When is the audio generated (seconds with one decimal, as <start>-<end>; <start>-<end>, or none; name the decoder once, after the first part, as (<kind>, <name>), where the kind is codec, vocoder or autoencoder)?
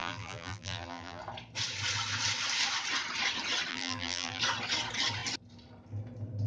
0.0-1.2 (vocoder, BigVGAN v2); 3.7-4.4